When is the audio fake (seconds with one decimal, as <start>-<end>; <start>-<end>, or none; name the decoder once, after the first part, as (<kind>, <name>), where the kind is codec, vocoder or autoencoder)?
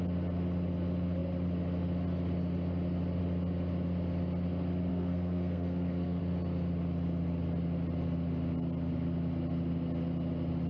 4.9-6.2 (codec, SNAC)